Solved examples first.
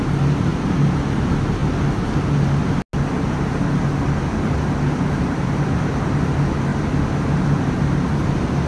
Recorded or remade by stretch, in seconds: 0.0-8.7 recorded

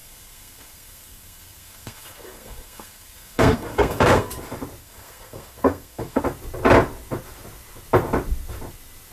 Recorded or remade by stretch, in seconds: 0.0-4.3 remade; 4.3-4.8 recorded; 4.8-6.2 remade; 6.2-9.1 recorded

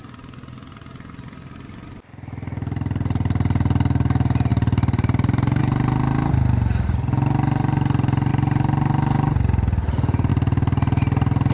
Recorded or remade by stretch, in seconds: 0.0-4.5 recorded; 4.5-5.6 remade; 5.6-11.5 recorded

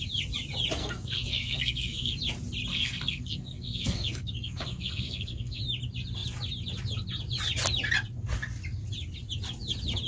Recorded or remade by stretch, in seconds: 0.0-0.8 recorded; 0.8-2.1 remade; 2.1-2.7 recorded; 2.7-5.6 remade; 5.6-10.1 recorded

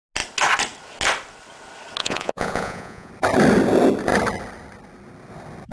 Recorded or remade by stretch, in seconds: 0.0-2.0 recorded; 2.0-3.1 remade; 3.1-5.7 recorded

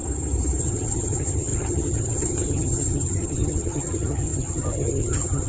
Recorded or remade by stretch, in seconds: 0.0-0.6 recorded; 0.6-5.5 remade